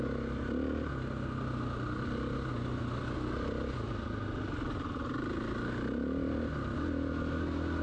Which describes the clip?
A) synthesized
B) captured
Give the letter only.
B